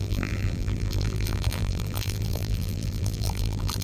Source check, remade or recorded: remade